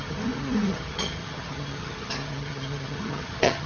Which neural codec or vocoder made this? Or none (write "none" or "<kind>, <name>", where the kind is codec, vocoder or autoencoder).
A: vocoder, HiFi-GAN